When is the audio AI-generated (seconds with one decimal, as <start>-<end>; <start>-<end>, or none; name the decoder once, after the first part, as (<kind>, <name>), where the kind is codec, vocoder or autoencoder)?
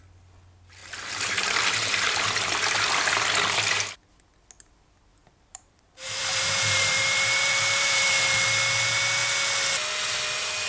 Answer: 5.1-8.1 (vocoder, BigVGAN v2)